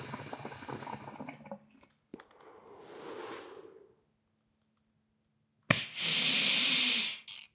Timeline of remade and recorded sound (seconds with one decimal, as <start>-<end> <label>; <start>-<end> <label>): 0.0-7.5 recorded